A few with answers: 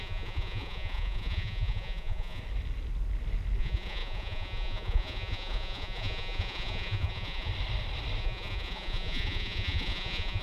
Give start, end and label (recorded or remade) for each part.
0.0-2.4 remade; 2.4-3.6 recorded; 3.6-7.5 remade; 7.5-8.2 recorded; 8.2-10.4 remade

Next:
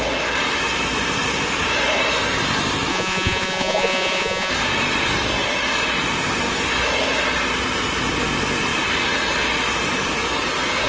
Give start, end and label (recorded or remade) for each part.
0.0-2.9 recorded; 2.9-4.5 remade; 4.5-10.9 recorded

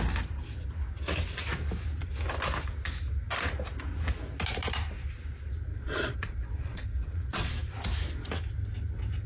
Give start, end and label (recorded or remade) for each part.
0.0-5.7 recorded; 5.7-7.5 remade; 7.5-9.3 recorded

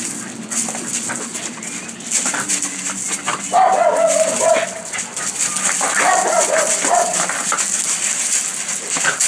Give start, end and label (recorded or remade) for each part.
0.0-9.3 recorded

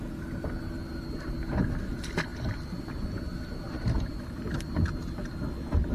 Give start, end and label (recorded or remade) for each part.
0.0-5.9 recorded